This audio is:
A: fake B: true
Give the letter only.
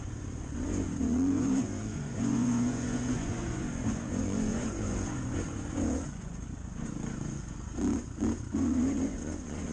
A